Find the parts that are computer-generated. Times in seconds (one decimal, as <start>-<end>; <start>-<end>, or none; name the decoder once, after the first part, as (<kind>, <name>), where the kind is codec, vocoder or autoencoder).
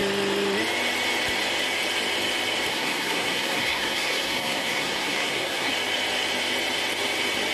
2.7-5.7 (codec, SNAC)